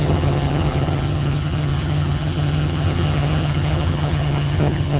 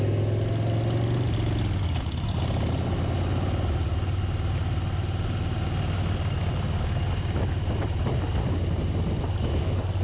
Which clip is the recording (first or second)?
second